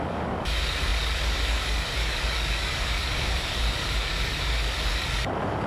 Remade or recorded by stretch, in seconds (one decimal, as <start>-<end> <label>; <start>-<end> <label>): 0.0-5.7 remade